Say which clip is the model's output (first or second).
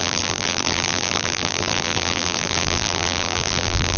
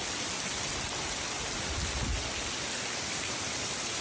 first